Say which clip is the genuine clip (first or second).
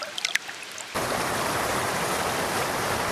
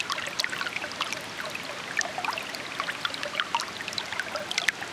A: second